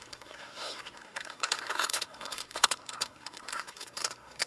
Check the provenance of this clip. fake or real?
fake